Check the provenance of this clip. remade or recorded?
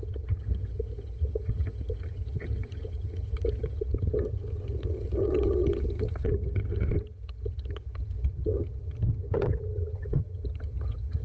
remade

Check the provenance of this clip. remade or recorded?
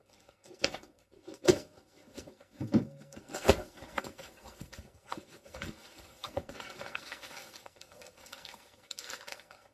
remade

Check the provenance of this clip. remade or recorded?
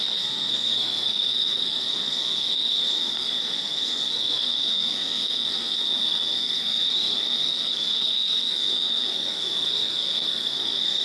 remade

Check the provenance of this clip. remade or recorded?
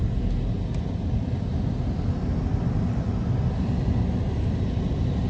recorded